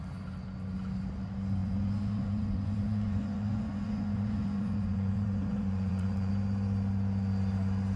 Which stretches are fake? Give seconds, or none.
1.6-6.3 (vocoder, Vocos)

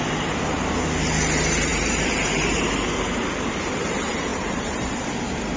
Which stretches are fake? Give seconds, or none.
1.7-2.6 (vocoder, BigVGAN v2); 4.3-5.6

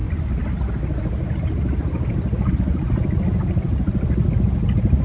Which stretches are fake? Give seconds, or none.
none

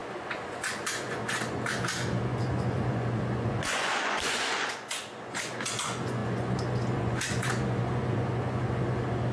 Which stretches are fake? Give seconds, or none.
0.0-9.3 (vocoder, Vocos)